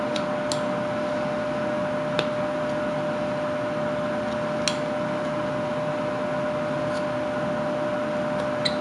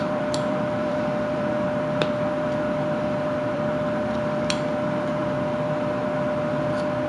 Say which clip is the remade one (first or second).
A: second